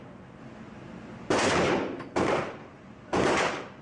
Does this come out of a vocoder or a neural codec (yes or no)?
no